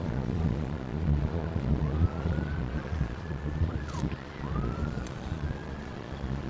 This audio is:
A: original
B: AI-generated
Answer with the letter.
B